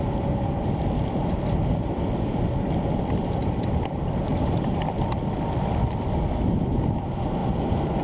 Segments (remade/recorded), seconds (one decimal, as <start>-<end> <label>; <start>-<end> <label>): 0.0-8.0 recorded